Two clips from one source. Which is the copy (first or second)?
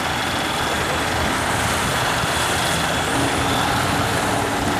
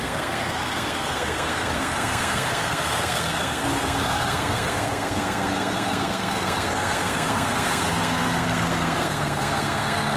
second